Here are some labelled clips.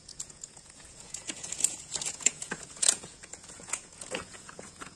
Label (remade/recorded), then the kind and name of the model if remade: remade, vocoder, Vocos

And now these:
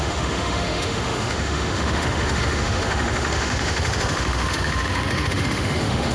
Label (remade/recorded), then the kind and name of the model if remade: remade, autoencoder, DAC-VAE